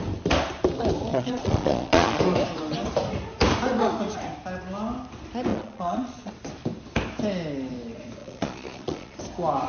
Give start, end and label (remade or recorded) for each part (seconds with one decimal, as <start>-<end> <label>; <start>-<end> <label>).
0.0-1.1 recorded; 1.1-2.2 remade; 2.2-5.5 recorded; 5.5-6.3 remade; 6.3-8.2 recorded; 8.2-9.2 remade; 9.2-9.7 recorded